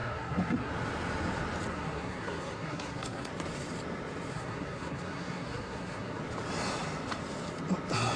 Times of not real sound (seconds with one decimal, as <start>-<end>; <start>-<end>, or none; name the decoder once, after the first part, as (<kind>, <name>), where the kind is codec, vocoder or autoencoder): 0.0-0.7 (codec, SNAC); 1.7-3.3; 4.3-6.2